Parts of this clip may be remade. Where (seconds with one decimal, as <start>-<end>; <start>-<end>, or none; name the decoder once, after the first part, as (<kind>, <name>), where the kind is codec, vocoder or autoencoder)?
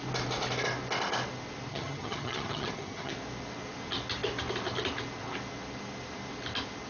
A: 1.7-3.1 (vocoder, HiFi-GAN)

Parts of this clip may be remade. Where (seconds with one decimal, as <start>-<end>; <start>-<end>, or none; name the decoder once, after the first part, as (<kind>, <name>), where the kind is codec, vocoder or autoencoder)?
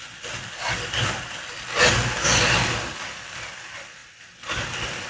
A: none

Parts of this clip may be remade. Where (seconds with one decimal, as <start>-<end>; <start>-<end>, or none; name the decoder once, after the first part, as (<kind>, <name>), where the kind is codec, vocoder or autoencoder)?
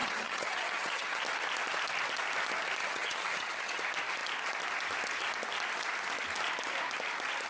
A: 0.0-1.2 (vocoder, HiFi-GAN); 2.8-3.8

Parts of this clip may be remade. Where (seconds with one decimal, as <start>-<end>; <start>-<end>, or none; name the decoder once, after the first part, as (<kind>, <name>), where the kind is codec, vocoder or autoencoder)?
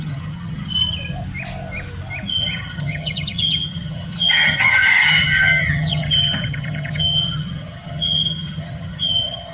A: 0.0-0.7 (vocoder, HiFi-GAN); 2.3-9.5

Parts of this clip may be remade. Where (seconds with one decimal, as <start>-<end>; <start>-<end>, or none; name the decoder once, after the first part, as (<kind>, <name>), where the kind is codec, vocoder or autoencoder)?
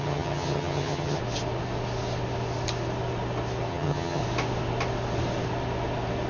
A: 0.0-1.2 (vocoder, HiFi-GAN); 3.7-4.2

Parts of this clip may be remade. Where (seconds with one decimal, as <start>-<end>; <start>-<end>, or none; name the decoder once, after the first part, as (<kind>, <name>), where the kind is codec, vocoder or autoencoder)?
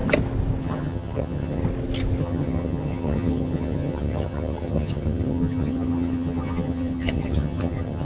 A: 0.6-1.6 (vocoder, HiFi-GAN); 2.2-8.0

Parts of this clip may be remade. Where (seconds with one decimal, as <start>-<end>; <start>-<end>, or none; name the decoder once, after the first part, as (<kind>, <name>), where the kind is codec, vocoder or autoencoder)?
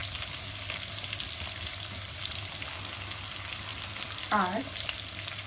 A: none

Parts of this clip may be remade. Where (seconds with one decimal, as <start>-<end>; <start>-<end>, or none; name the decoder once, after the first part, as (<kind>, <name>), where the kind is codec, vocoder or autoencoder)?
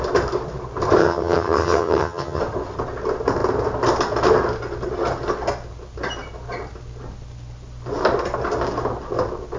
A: 1.0-2.4 (vocoder, HiFi-GAN)